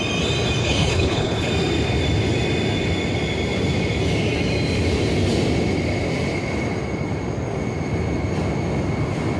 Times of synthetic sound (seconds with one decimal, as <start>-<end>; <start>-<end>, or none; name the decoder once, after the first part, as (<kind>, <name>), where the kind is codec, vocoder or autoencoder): 0.6-1.5 (codec, HILCodec)